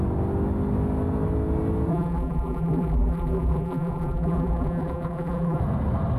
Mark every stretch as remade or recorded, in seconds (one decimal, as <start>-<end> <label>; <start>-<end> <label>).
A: 0.0-1.9 recorded; 1.9-5.6 remade; 5.6-6.2 recorded

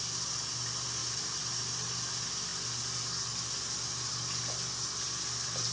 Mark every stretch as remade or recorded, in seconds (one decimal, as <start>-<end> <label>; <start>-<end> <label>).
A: 0.0-1.0 recorded; 1.0-1.6 remade; 1.6-5.7 recorded

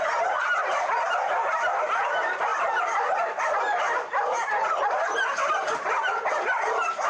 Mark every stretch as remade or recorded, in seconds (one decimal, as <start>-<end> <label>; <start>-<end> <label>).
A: 0.0-7.1 recorded

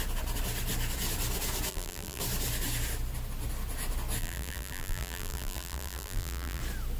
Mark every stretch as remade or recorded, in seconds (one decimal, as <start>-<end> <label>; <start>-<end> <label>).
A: 0.0-1.7 recorded; 1.7-2.2 remade; 2.2-4.2 recorded; 4.2-6.6 remade; 6.6-7.0 recorded

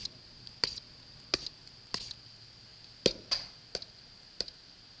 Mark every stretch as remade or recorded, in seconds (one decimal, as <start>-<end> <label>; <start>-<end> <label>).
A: 0.0-5.0 recorded

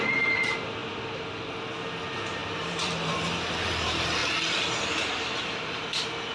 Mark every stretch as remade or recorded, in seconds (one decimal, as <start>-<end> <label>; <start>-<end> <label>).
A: 0.0-2.4 recorded; 2.4-3.7 remade; 3.7-6.3 recorded